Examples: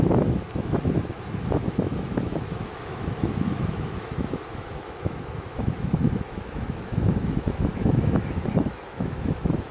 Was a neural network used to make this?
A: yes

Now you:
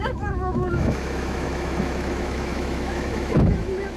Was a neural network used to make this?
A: yes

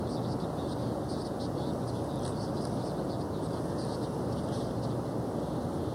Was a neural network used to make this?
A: no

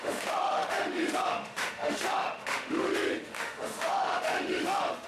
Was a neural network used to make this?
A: yes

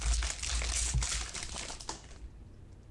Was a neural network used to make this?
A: no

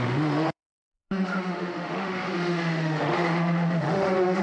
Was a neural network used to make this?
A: yes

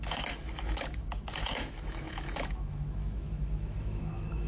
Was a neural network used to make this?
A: yes